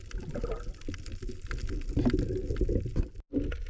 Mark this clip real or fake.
real